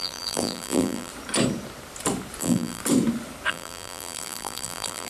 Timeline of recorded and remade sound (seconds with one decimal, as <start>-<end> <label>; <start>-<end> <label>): 0.0-1.1 remade; 1.1-2.4 recorded; 2.4-2.8 remade; 2.8-3.5 recorded; 3.5-5.1 remade